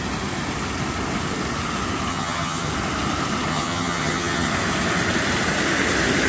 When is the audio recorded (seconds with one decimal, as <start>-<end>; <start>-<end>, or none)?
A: 0.0-2.1; 2.7-3.5; 4.5-6.3